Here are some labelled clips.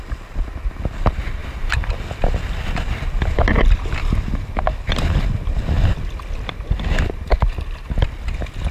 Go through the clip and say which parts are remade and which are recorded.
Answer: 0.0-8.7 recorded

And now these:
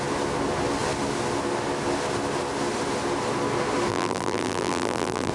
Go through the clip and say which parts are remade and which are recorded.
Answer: 0.0-3.9 recorded; 3.9-5.3 remade

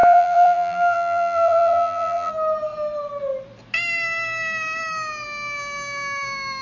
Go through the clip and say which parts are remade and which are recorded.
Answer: 0.0-2.3 remade; 2.3-6.6 recorded

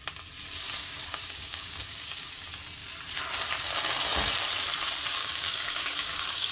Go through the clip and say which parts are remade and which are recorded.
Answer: 0.0-0.8 recorded; 0.8-2.3 remade; 2.3-5.2 recorded; 5.2-6.5 remade

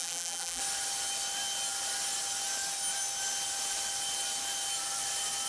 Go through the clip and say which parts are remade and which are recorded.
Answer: 0.0-0.6 remade; 0.6-5.5 recorded

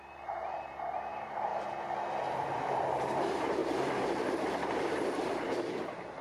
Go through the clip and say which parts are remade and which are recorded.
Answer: 0.0-1.5 remade; 1.5-2.2 recorded; 2.2-3.6 remade; 3.6-4.3 recorded; 4.3-6.2 remade

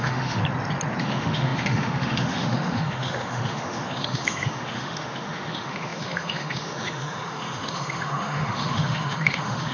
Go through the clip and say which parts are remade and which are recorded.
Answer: 0.0-0.4 remade; 0.4-1.0 recorded; 1.0-9.7 remade

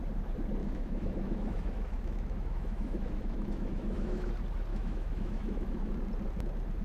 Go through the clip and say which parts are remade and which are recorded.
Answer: 0.0-0.6 recorded; 0.6-4.3 remade; 4.3-4.7 recorded; 4.7-5.9 remade; 5.9-6.8 recorded